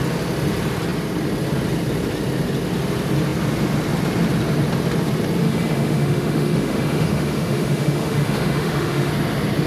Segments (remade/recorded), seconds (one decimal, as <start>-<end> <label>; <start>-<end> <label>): 0.0-5.4 recorded; 5.4-9.1 remade; 9.1-9.7 recorded